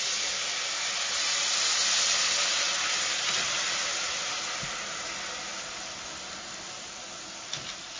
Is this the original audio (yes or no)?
yes